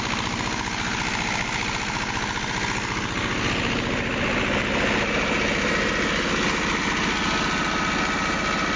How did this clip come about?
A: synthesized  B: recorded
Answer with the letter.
B